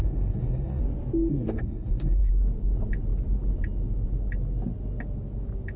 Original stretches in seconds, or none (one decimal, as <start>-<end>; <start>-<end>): 0.8-1.3; 2.3-5.8

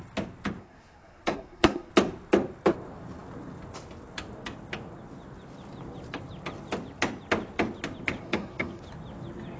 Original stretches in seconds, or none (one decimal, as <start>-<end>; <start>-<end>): 0.0-0.6; 1.9-8.2; 8.8-9.6

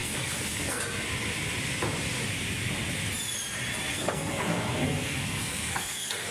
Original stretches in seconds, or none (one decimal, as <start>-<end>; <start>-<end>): 0.8-3.9

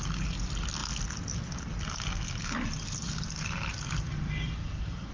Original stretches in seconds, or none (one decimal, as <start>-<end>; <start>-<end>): 0.0-4.6

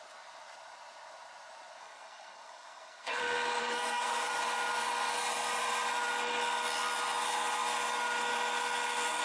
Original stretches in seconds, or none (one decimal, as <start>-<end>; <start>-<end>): 0.0-1.8; 3.2-3.6; 4.3-9.2

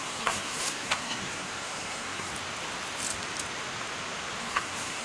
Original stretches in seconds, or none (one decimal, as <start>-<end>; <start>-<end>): 2.3-4.4

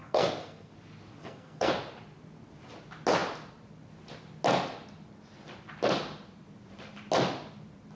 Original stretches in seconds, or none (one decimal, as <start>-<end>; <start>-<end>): 0.7-1.2; 1.7-7.9

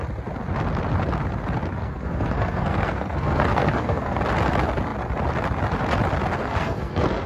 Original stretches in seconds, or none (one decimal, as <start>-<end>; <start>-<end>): 0.0-1.8; 4.2-6.4